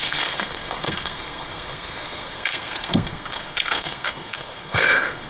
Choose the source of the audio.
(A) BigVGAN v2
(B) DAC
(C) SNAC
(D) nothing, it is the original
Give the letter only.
C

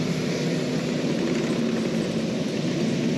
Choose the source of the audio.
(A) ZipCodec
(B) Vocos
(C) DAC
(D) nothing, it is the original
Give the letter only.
D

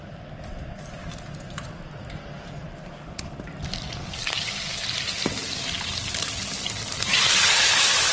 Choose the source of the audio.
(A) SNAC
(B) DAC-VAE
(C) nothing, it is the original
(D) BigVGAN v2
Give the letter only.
C